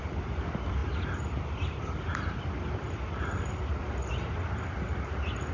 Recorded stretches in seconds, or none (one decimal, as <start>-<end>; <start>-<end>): 0.0-5.5